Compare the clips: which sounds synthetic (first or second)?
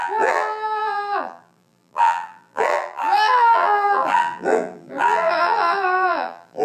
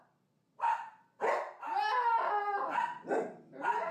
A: first